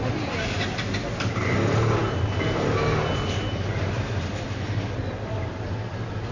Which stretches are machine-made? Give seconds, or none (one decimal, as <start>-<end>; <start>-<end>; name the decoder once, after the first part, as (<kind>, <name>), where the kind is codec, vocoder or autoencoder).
none